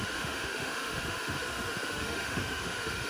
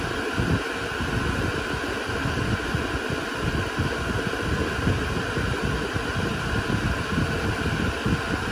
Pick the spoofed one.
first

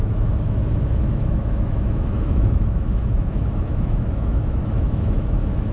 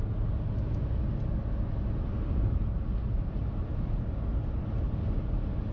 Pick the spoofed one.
first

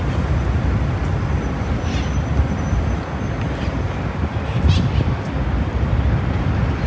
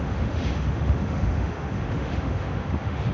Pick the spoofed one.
second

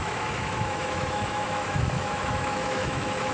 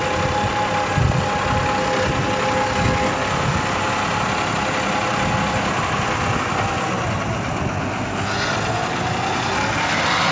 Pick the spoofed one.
first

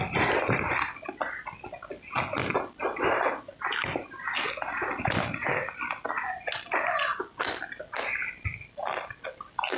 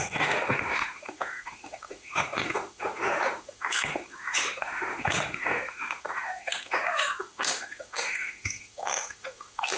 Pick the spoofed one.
second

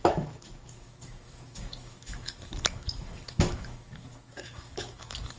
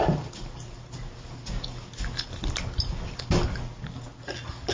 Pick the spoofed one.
first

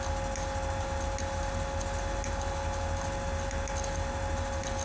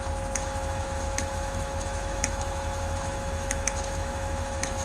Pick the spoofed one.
second